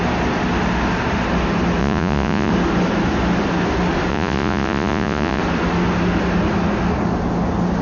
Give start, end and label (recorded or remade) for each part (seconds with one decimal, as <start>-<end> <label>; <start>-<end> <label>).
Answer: 0.0-1.8 recorded; 1.8-2.5 remade; 2.5-4.1 recorded; 4.1-5.4 remade; 5.4-7.8 recorded